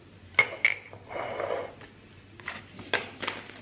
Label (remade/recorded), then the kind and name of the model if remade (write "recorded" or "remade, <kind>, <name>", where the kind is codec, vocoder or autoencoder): recorded